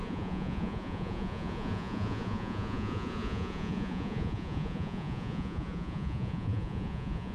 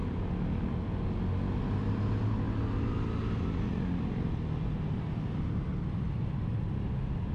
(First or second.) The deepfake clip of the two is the first